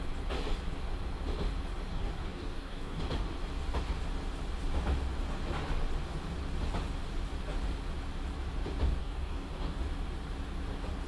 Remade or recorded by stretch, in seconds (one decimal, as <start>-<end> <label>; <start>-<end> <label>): 0.0-1.9 recorded; 1.9-3.0 remade; 3.0-9.0 recorded; 9.0-9.8 remade; 9.8-11.1 recorded